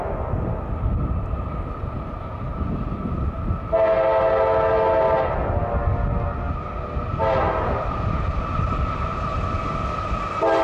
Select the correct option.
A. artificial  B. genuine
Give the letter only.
B